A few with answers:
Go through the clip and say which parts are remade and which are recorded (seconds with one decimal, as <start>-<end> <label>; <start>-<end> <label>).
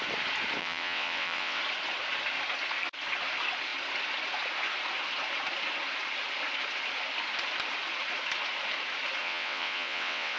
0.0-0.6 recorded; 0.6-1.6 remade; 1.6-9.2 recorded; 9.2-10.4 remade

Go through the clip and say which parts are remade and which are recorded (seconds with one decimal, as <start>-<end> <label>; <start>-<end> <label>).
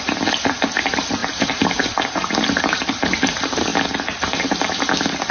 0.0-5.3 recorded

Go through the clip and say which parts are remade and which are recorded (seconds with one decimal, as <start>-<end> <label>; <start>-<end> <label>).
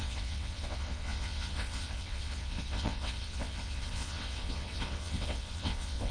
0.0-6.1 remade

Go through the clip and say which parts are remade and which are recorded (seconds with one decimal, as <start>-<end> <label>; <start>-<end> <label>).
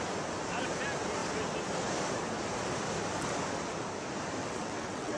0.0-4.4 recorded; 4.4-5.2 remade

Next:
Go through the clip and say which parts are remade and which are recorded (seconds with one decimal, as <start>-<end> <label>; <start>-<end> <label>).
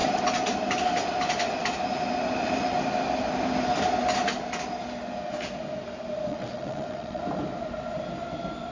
0.0-6.3 recorded; 6.3-7.2 remade; 7.2-8.7 recorded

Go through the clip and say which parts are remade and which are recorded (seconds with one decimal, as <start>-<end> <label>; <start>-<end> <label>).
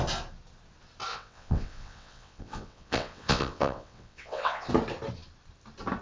0.0-1.1 recorded; 1.1-4.7 remade; 4.7-6.0 recorded